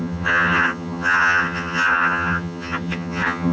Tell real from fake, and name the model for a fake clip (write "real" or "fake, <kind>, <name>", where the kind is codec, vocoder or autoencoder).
fake, vocoder, HiFi-GAN